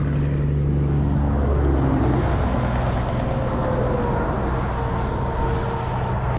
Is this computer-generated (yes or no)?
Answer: no